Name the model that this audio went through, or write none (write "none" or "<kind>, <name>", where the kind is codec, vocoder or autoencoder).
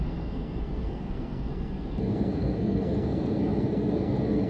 codec, SNAC